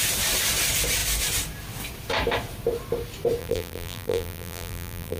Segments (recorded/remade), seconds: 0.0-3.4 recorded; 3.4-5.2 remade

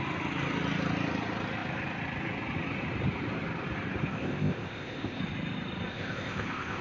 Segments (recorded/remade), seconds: 0.0-4.1 recorded; 4.1-5.2 remade; 5.2-5.9 recorded; 5.9-6.8 remade

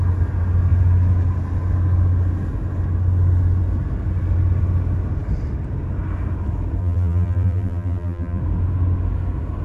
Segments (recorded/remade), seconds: 0.0-6.8 recorded; 6.8-8.4 remade; 8.4-9.6 recorded

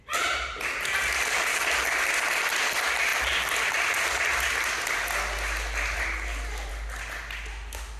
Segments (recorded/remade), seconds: 0.0-7.5 recorded; 7.5-8.0 remade

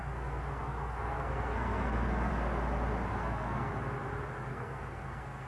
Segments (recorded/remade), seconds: 0.0-2.3 remade; 2.3-3.1 recorded; 3.1-3.7 remade; 3.7-4.5 recorded; 4.5-5.5 remade